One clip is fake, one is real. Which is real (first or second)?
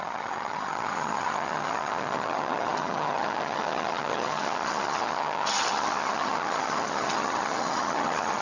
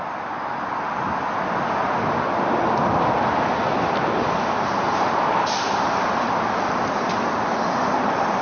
second